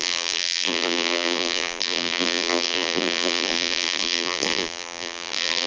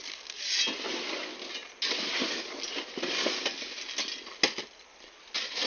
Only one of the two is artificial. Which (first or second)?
first